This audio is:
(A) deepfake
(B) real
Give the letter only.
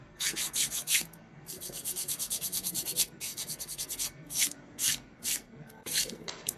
A